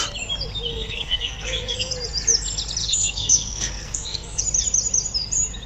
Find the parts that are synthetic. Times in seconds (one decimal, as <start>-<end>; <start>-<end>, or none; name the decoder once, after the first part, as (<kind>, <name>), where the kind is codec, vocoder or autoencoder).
0.7-1.9 (codec, SNAC); 2.8-4.4